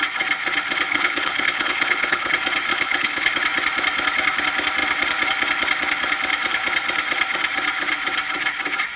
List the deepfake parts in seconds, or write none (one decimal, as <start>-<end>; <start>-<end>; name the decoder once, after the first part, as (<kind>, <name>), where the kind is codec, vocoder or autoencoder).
0.9-2.3 (codec, HILCodec); 2.7-3.3